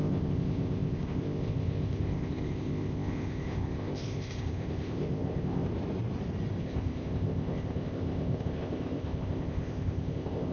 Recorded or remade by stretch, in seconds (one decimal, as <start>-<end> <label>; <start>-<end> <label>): 0.0-5.7 remade; 5.7-6.6 recorded; 6.6-10.5 remade